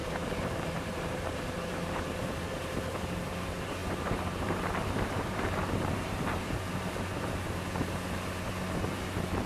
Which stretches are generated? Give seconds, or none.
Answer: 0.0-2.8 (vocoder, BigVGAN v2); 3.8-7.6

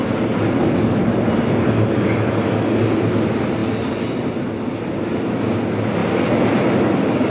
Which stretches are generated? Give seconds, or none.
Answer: none

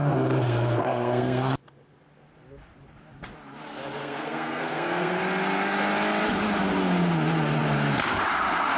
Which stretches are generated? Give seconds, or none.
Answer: 0.0-1.5 (codec, SNAC); 4.0-5.2

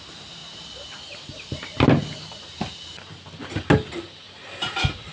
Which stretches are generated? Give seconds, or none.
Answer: none

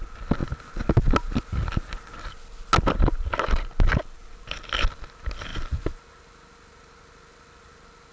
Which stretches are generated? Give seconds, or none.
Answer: none

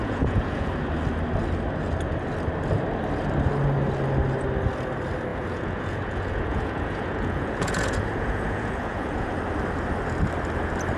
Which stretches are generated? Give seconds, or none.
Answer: 0.0-0.7 (vocoder, Vocos); 5.3-9.4

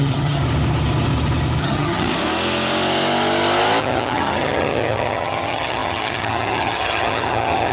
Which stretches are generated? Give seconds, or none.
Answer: 0.0-0.4 (vocoder, HiFi-GAN); 1.6-2.1; 3.8-7.7